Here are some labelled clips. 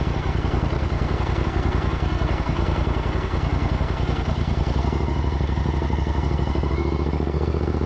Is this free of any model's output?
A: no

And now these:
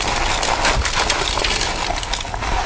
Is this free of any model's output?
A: yes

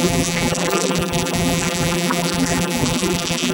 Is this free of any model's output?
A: no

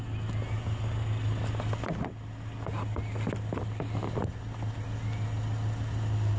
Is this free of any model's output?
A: yes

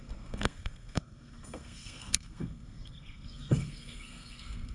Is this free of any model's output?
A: no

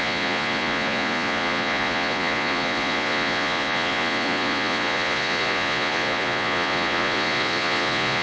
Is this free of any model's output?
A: no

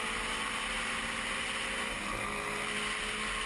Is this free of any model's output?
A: yes